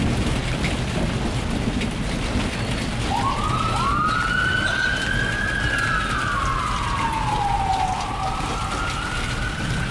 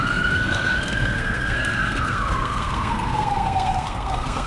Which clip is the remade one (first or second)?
second